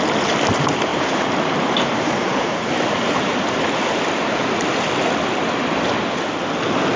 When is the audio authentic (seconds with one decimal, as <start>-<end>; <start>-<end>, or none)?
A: 0.0-0.9; 3.3-7.0